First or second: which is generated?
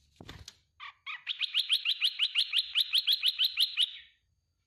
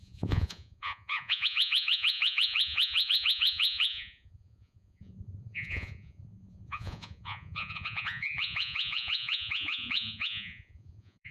second